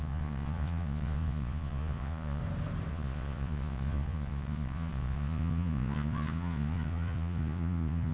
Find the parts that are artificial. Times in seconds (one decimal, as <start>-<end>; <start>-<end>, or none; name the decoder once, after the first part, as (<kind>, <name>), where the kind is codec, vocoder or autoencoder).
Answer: 0.0-2.4 (vocoder, Vocos); 2.9-8.1